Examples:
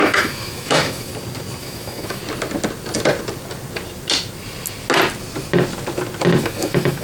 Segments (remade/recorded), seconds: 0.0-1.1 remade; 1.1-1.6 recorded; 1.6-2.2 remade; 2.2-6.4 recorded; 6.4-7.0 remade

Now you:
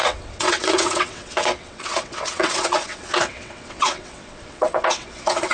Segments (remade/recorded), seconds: 0.0-5.5 remade

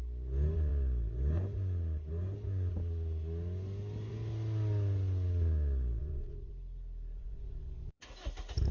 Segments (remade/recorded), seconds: 0.0-6.0 recorded; 6.0-6.5 remade; 6.5-7.2 recorded; 7.2-7.9 remade; 7.9-8.7 recorded